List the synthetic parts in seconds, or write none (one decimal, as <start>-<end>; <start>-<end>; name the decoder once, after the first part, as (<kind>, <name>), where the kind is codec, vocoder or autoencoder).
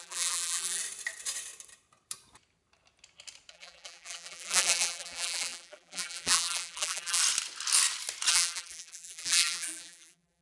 0.0-0.8 (vocoder, BigVGAN v2); 3.5-7.2; 8.3-10.4